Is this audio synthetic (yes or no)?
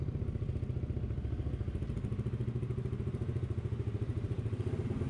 no